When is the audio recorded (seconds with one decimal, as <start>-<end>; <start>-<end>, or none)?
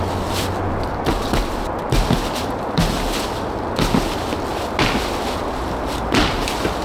0.0-6.8